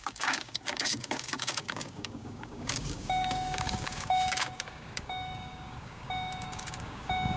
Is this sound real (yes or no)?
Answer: no